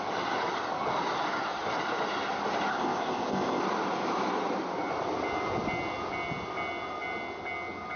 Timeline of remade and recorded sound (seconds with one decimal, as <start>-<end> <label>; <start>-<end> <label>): 0.0-2.7 recorded; 2.7-3.6 remade; 3.6-8.0 recorded